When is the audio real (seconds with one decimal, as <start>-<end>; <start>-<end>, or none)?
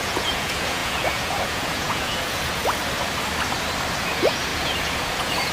2.6-4.0